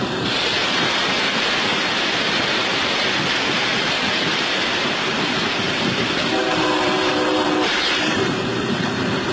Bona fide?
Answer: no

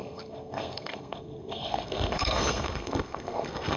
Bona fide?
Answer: no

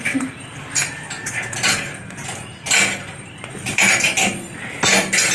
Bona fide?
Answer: yes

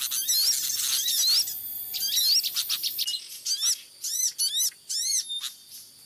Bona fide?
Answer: yes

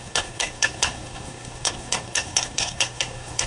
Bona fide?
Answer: no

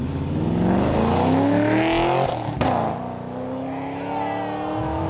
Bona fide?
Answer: yes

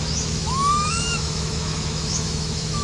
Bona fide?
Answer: no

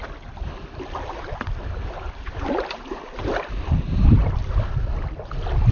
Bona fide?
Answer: yes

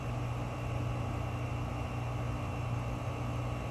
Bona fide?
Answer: yes